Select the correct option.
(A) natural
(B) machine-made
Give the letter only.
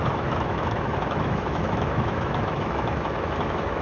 B